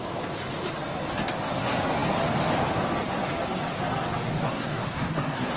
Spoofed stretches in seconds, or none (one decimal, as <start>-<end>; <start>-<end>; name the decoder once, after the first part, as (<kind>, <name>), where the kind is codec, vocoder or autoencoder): 4.4-5.6 (codec, SNAC)